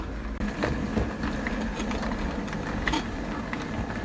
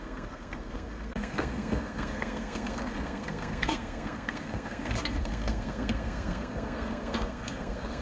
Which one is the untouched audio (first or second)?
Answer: first